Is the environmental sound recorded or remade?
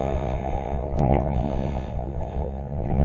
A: remade